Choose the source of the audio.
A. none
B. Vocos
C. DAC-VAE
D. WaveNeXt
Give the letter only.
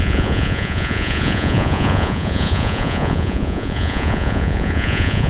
B